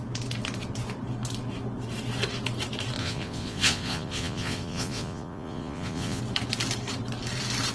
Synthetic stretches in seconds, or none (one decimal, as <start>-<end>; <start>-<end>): 3.0-6.2